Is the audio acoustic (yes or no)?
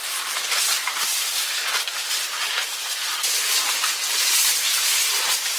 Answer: no